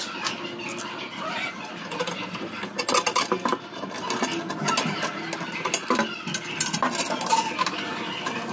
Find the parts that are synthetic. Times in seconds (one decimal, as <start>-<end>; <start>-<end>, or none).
3.5-4.0